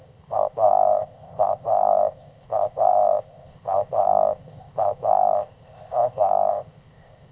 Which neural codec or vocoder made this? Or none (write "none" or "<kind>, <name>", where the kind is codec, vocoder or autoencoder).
codec, ZipCodec